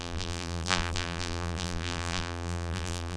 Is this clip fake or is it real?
fake